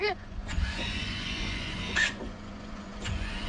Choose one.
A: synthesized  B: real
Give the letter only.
A